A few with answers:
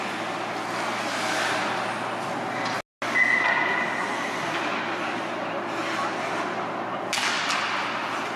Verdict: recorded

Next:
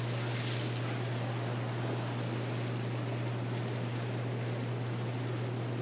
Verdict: recorded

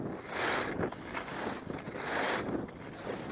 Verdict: recorded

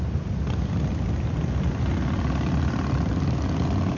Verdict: recorded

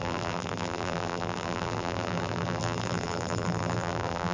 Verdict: remade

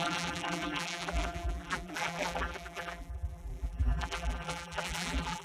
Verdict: remade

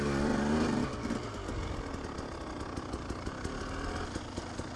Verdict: recorded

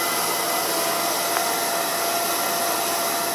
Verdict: recorded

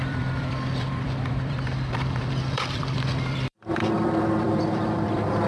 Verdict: remade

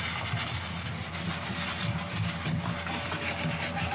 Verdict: recorded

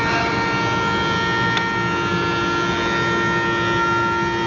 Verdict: recorded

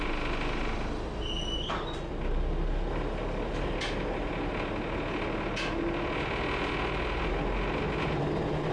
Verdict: recorded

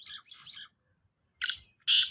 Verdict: recorded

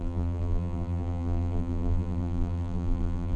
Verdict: remade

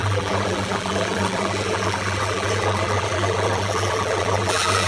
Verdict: remade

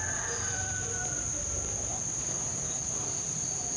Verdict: remade